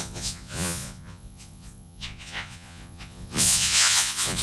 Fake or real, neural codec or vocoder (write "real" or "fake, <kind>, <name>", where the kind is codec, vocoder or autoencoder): fake, vocoder, Vocos